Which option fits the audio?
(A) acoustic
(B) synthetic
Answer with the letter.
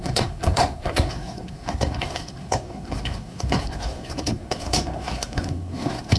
B